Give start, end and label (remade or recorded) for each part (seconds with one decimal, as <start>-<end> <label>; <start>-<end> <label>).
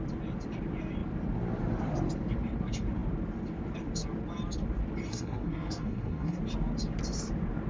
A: 0.0-5.1 recorded; 5.1-6.4 remade; 6.4-7.7 recorded